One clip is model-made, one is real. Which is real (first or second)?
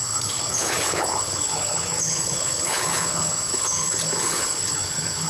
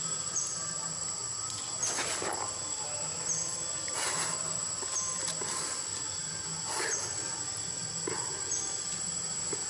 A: second